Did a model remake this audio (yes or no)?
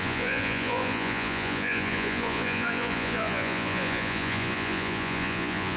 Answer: yes